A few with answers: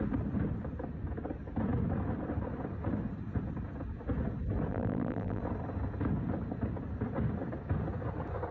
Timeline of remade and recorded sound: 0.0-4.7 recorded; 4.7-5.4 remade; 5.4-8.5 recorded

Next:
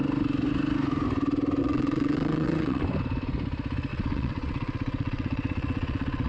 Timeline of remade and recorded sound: 0.0-1.6 recorded; 1.6-2.8 remade; 2.8-3.9 recorded; 3.9-6.3 remade

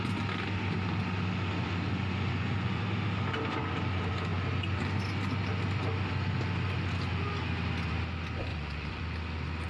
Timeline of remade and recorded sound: 0.0-1.9 recorded; 1.9-2.8 remade; 2.8-8.5 recorded; 8.5-9.0 remade; 9.0-9.7 recorded

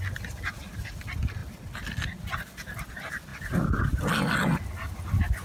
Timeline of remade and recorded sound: 0.0-5.4 recorded